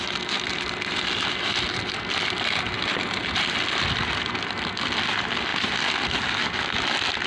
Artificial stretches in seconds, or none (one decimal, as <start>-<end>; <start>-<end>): none